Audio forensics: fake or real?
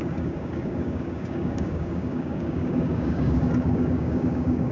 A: fake